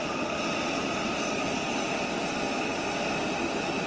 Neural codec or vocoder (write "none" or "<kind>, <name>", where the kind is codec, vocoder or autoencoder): none